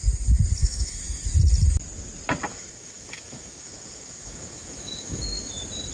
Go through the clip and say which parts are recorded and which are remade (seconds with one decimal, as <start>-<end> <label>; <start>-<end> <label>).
0.0-0.6 recorded; 0.6-1.2 remade; 1.2-2.5 recorded; 2.5-5.5 remade; 5.5-5.9 recorded